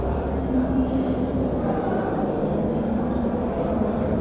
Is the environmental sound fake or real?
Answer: fake